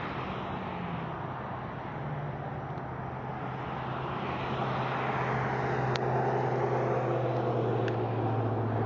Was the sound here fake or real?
real